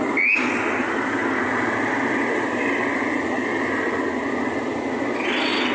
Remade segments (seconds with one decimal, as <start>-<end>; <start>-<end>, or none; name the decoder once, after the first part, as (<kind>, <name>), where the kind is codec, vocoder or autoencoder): none